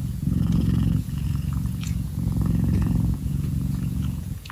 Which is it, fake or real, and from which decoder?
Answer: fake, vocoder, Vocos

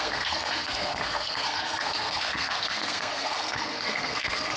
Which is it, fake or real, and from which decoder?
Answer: fake, codec, SNAC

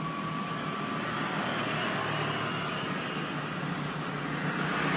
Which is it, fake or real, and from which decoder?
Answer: real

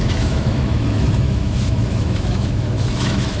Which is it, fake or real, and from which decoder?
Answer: fake, autoencoder, DAC-VAE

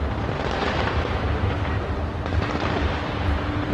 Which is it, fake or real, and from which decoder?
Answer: fake, vocoder, BigVGAN v2